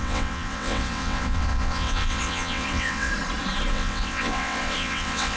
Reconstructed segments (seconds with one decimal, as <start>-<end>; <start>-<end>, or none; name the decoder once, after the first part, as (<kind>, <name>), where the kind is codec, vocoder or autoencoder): 0.0-3.1 (vocoder, WaveNeXt); 3.7-5.4